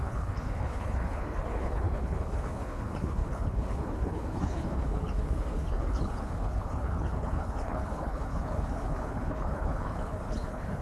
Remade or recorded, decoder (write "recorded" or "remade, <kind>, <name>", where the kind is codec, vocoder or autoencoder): remade, codec, HILCodec